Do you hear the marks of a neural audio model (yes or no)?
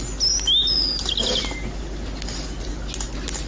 no